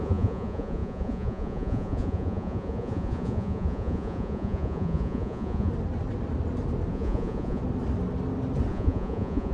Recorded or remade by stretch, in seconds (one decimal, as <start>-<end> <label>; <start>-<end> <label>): 0.0-5.7 remade; 5.7-6.9 recorded; 6.9-7.6 remade; 7.6-8.7 recorded; 8.7-9.5 remade

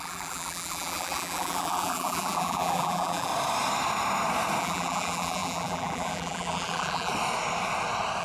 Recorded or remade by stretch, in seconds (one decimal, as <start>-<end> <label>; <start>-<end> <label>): 0.0-3.3 remade; 3.3-4.6 recorded; 4.6-7.1 remade; 7.1-8.2 recorded

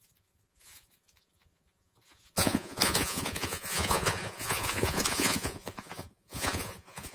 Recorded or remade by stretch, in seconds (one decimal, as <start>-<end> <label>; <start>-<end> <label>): 0.0-7.1 remade

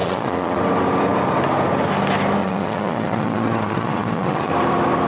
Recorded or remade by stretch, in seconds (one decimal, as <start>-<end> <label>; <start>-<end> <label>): 0.0-0.6 remade; 0.6-2.4 recorded; 2.4-4.5 remade; 4.5-5.1 recorded

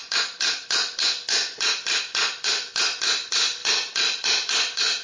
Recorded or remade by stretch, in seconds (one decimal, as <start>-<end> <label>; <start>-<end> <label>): 0.0-3.0 recorded; 3.0-5.0 remade

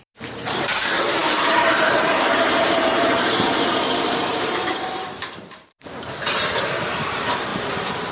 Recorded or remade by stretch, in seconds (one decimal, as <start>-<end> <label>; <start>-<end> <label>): 0.0-8.1 remade